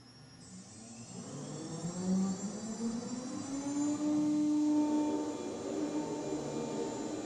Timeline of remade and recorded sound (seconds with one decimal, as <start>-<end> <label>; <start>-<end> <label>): 0.0-7.3 recorded

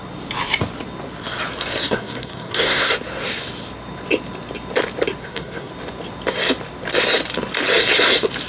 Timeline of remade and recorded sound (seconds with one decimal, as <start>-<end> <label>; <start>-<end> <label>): 0.0-1.7 recorded; 1.7-2.9 remade; 2.9-5.2 recorded; 5.2-5.7 remade; 5.7-8.5 recorded

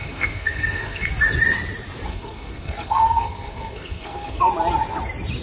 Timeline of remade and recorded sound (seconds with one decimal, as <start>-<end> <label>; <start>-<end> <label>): 0.0-1.1 remade; 1.1-2.1 recorded; 2.1-4.4 remade; 4.4-5.4 recorded

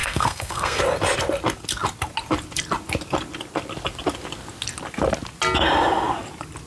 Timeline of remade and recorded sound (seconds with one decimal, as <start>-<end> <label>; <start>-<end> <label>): 0.0-0.8 remade; 0.8-6.7 recorded

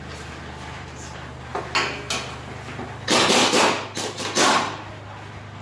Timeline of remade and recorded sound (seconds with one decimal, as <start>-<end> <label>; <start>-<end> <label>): 0.0-5.6 recorded

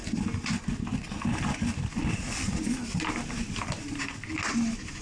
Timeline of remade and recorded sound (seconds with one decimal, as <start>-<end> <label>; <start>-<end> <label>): 0.0-5.0 recorded